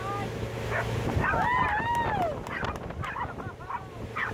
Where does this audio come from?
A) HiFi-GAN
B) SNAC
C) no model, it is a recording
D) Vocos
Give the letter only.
C